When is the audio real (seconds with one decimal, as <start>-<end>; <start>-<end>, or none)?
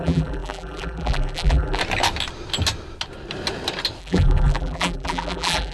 1.8-4.0